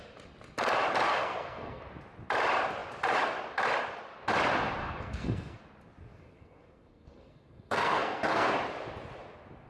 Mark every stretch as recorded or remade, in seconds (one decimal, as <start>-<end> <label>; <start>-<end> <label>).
0.0-1.1 recorded; 1.1-1.8 remade; 1.8-4.8 recorded; 4.8-5.6 remade; 5.6-6.1 recorded; 6.1-8.5 remade; 8.5-9.7 recorded